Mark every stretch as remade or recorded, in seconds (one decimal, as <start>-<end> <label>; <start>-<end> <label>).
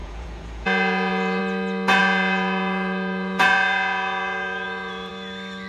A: 0.0-1.4 remade; 1.4-2.0 recorded; 2.0-5.1 remade; 5.1-5.7 recorded